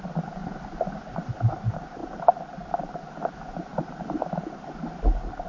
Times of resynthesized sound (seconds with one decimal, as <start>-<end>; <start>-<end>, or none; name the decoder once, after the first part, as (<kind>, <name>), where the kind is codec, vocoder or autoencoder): none